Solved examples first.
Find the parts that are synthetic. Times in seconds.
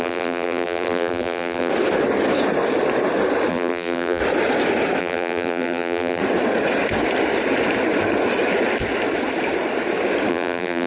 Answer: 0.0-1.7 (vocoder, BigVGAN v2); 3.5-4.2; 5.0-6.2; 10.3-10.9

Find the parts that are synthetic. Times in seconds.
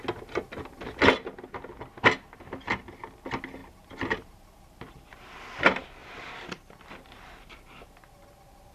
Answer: 3.6-5.1 (vocoder, BigVGAN v2); 6.0-6.6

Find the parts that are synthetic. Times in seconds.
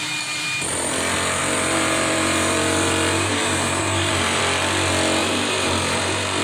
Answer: 1.4-4.4 (vocoder, BigVGAN v2); 5.2-6.4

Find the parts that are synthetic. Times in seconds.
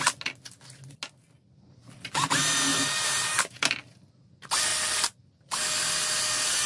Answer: 2.7-3.7 (vocoder, BigVGAN v2)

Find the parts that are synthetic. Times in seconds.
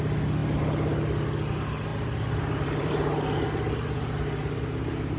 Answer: 1.9-2.9 (vocoder, BigVGAN v2)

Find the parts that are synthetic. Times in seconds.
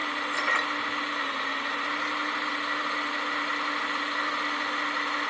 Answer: none